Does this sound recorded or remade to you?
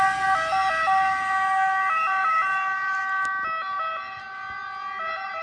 recorded